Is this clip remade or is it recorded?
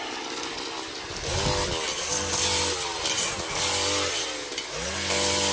recorded